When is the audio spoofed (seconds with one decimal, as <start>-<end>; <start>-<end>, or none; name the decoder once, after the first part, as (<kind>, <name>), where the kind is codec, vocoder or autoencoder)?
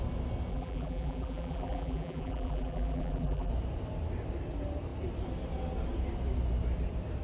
0.5-3.5 (vocoder, BigVGAN v2)